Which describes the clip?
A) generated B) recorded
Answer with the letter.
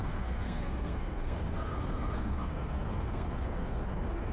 A